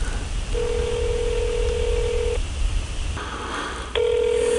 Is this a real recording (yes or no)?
yes